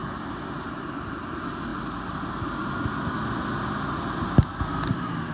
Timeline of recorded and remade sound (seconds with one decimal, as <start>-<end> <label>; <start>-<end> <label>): 0.0-5.3 recorded